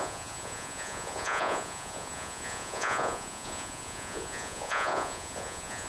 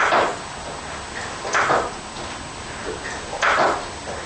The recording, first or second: second